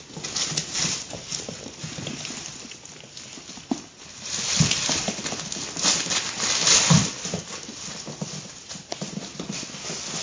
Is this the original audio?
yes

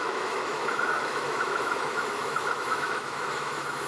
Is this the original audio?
no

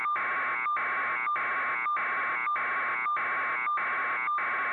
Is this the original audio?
yes